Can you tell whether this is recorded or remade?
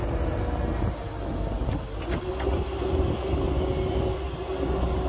recorded